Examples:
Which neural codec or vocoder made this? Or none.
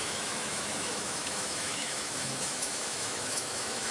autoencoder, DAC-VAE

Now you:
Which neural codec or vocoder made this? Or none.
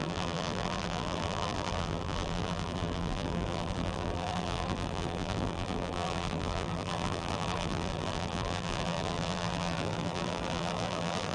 vocoder, BigVGAN v2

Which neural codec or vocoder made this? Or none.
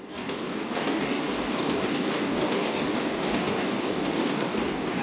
codec, DAC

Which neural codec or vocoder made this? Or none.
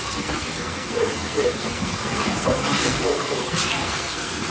codec, SNAC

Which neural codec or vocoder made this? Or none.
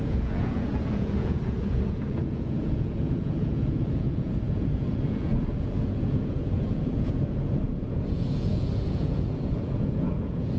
vocoder, Vocos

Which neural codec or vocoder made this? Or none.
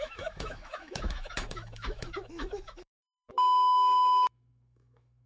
autoencoder, DAC-VAE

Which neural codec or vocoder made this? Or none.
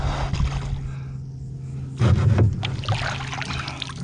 none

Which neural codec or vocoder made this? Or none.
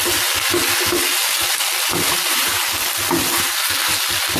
none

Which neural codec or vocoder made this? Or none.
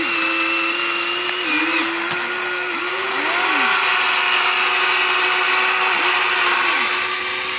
none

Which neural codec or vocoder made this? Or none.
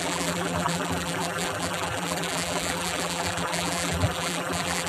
vocoder, BigVGAN v2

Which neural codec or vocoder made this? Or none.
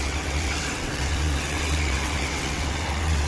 vocoder, WaveNeXt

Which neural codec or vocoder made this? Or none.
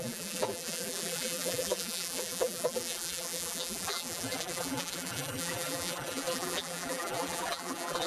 vocoder, BigVGAN v2